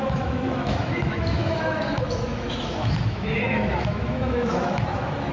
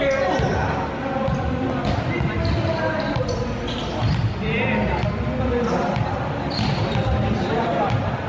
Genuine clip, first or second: second